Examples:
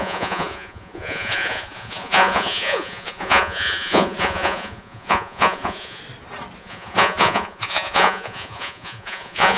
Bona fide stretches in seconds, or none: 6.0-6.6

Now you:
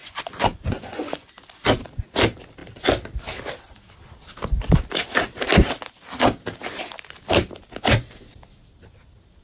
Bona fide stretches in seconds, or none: 1.3-9.4

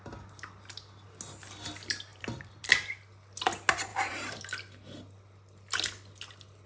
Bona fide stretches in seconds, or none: 0.0-2.1; 2.7-3.9; 4.4-6.7

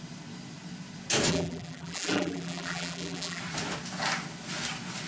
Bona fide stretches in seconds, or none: 0.0-1.3; 3.4-5.1

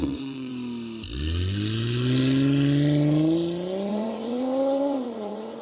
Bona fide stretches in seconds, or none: 0.5-3.9

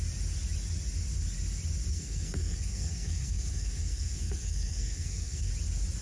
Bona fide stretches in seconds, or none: 0.0-1.9; 5.5-6.0

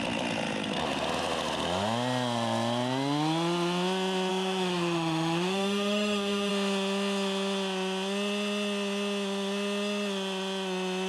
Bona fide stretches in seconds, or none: 0.0-4.3; 6.5-11.1